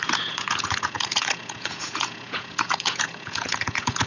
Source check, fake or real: fake